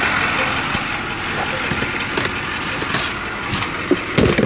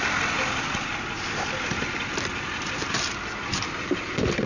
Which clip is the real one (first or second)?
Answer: first